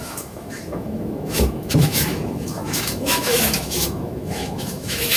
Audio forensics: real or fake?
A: fake